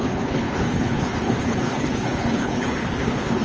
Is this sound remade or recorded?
remade